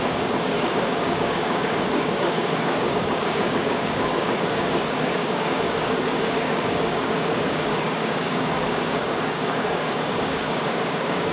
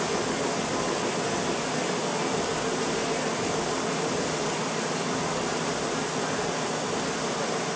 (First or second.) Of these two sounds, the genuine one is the second